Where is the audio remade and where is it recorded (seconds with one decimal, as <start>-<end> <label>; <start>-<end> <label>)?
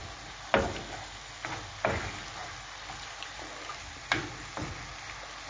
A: 0.0-5.5 recorded